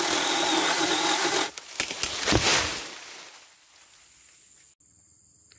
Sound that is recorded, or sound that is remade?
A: recorded